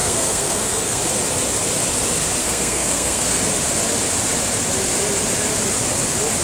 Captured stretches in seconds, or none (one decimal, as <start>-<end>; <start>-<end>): 1.0-2.4; 3.4-6.4